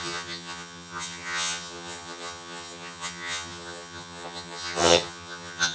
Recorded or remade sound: remade